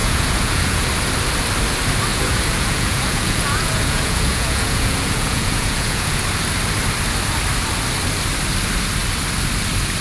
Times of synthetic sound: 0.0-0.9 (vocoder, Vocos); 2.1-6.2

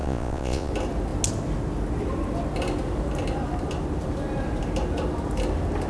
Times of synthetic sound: 0.0-0.7 (vocoder, Vocos)

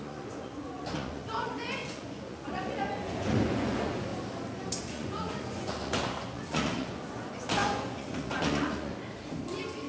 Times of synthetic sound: 0.0-4.1 (vocoder, Vocos); 4.8-8.9

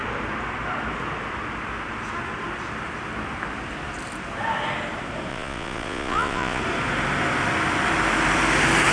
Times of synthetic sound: 5.3-6.6 (vocoder, Vocos)